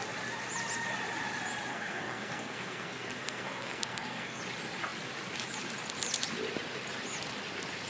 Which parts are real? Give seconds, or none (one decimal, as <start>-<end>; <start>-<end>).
0.0-1.7; 4.4-7.9